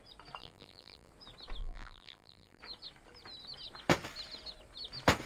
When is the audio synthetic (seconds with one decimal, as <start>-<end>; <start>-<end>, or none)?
0.4-1.1; 1.6-2.6

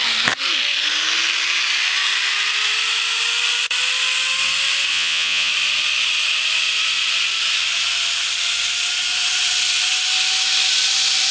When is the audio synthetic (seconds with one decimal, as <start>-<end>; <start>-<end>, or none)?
4.9-5.5

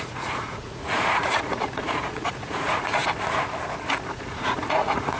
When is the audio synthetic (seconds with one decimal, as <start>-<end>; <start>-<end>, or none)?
0.0-3.0; 4.1-5.2

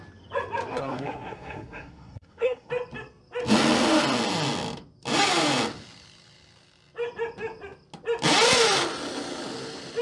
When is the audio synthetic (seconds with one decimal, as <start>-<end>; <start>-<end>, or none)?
0.7-2.7

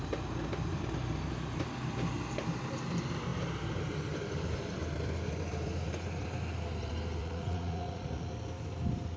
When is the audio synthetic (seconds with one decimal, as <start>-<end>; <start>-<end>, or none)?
7.2-8.3